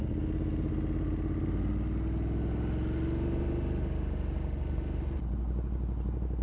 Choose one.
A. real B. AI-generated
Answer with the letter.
A